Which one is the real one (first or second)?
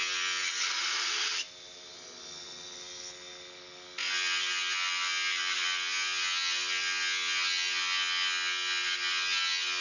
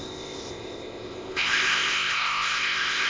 first